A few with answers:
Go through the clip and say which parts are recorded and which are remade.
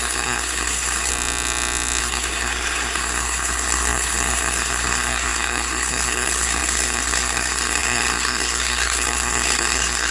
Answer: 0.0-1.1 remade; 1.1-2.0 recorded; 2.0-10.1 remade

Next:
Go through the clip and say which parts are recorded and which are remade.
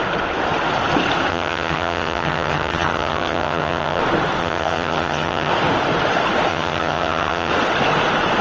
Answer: 0.0-1.3 recorded; 1.3-4.0 remade; 4.0-4.4 recorded; 4.4-5.5 remade; 5.5-6.5 recorded; 6.5-7.5 remade; 7.5-8.4 recorded